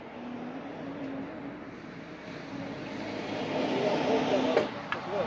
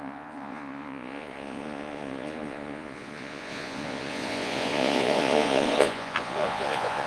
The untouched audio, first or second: first